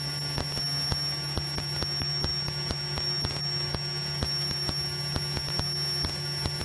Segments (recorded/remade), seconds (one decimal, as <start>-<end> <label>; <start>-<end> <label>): 0.0-6.6 recorded

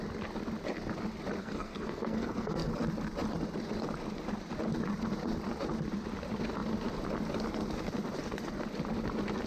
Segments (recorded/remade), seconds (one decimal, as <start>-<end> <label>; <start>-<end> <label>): 0.0-1.4 recorded; 1.4-2.7 remade; 2.7-9.5 recorded

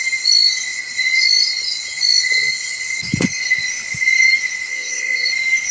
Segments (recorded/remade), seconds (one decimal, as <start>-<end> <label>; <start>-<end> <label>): 0.0-4.7 recorded; 4.7-5.3 remade; 5.3-5.7 recorded

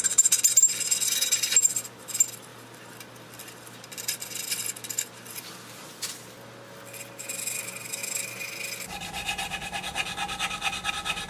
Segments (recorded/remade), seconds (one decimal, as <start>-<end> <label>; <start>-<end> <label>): 0.0-11.3 recorded

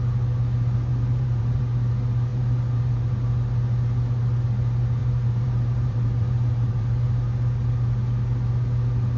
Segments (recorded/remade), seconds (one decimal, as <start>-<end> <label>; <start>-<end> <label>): 0.0-0.9 recorded; 0.9-1.6 remade; 1.6-2.3 recorded; 2.3-3.1 remade; 3.1-5.0 recorded; 5.0-7.1 remade; 7.1-9.2 recorded

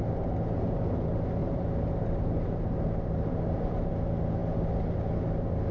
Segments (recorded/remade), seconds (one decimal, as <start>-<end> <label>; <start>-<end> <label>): 0.0-1.4 recorded; 1.4-3.9 remade; 3.9-5.7 recorded

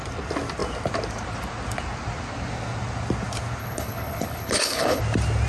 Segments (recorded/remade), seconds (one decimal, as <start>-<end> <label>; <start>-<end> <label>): 0.0-3.6 recorded; 3.6-5.0 remade; 5.0-5.5 recorded